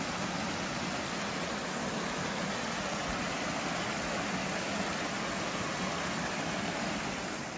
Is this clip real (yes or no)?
yes